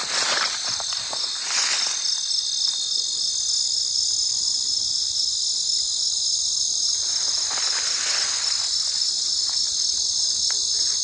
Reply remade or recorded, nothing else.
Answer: recorded